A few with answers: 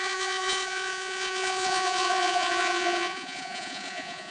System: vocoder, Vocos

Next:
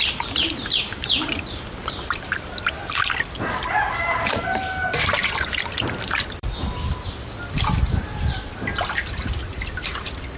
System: vocoder, BigVGAN v2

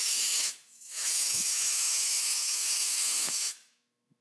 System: autoencoder, DAC-VAE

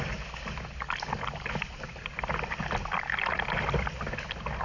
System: none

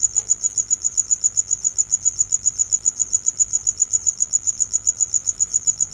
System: vocoder, BigVGAN v2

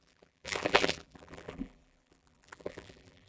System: vocoder, BigVGAN v2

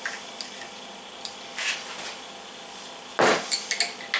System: none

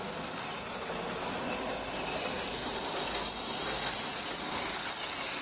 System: none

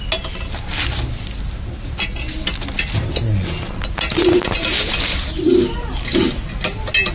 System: none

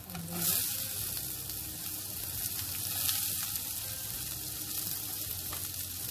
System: none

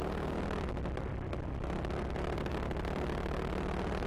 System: none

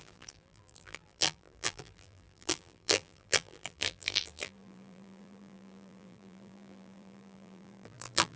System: vocoder, BigVGAN v2